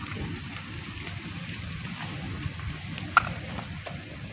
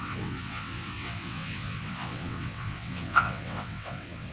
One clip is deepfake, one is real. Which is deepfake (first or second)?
second